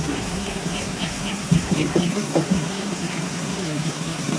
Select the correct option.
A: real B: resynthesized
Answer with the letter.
B